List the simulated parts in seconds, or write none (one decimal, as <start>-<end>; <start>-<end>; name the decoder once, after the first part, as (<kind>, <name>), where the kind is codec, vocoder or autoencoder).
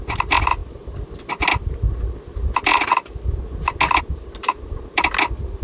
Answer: 4.4-5.1 (vocoder, BigVGAN v2)